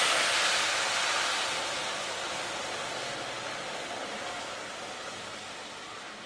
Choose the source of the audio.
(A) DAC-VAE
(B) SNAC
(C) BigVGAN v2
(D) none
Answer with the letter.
D